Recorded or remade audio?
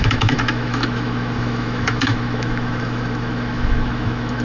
remade